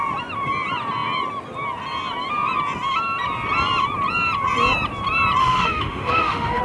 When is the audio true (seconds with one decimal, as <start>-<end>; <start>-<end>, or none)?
0.0-5.4